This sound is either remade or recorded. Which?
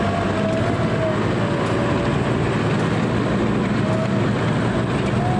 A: recorded